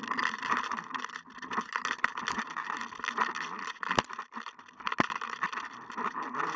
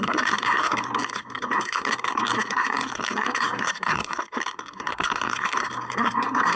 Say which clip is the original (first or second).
first